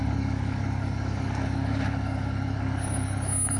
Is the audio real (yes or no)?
no